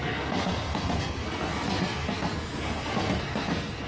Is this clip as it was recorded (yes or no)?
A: no